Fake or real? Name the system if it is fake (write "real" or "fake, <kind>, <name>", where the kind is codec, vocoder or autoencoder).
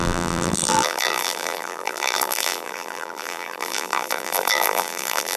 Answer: fake, vocoder, BigVGAN v2